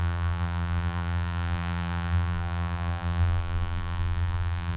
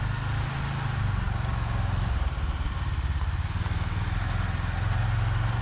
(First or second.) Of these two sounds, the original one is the second